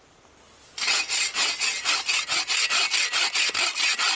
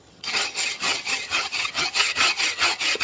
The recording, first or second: first